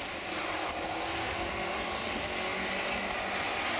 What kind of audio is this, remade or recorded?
recorded